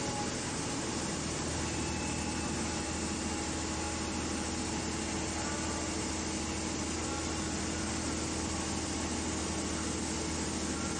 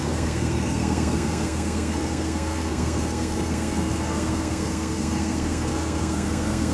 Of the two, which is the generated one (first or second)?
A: second